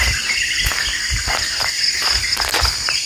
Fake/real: real